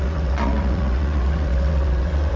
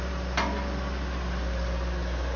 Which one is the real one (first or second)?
second